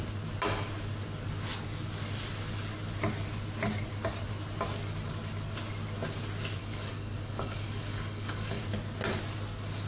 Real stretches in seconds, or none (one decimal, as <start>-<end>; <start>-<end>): 0.0-6.6; 8.6-9.9